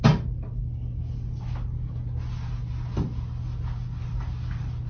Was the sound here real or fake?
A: real